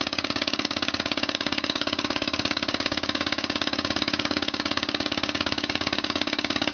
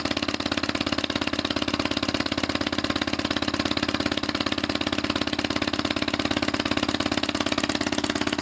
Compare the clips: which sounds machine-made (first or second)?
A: first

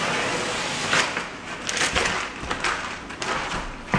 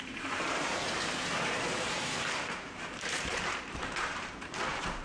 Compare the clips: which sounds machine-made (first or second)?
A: second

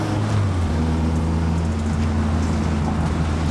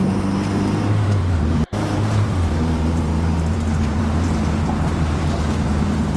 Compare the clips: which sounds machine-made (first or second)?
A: second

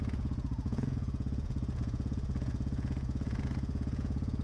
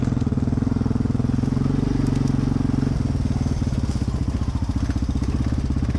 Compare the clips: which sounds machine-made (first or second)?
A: first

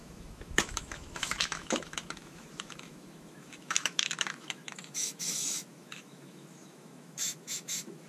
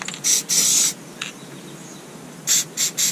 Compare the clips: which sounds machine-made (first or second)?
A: first